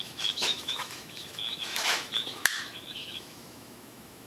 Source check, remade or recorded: remade